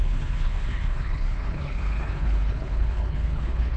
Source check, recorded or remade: remade